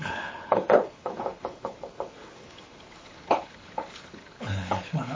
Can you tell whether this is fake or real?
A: fake